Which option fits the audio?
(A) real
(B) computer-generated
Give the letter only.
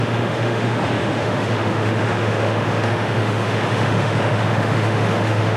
B